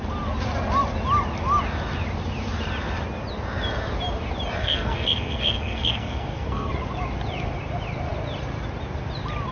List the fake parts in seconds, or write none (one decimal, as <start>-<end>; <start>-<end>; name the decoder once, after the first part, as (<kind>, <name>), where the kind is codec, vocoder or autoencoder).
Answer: 4.6-6.7 (codec, SNAC)